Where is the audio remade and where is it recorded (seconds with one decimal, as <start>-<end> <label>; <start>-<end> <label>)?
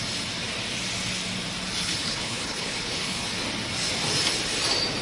0.0-1.8 recorded; 1.8-3.3 remade; 3.3-5.0 recorded